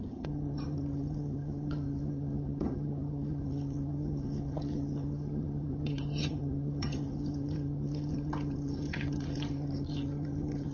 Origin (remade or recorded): remade